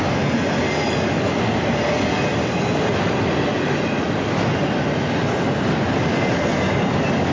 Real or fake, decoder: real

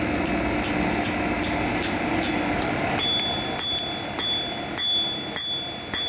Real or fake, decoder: real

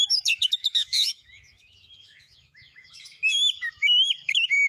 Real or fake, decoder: fake, autoencoder, DAC-VAE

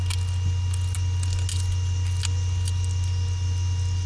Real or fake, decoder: real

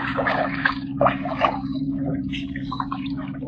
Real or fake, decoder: fake, codec, DAC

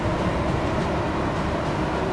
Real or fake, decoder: fake, vocoder, BigVGAN v2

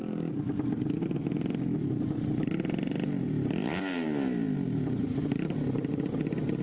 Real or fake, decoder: real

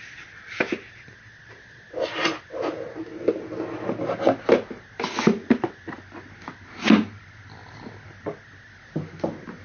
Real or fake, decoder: real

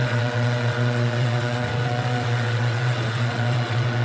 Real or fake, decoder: fake, vocoder, WaveNeXt